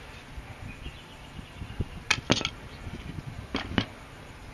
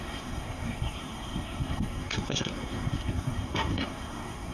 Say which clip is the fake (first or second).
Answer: second